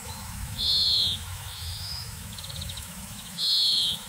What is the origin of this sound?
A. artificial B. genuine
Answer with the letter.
A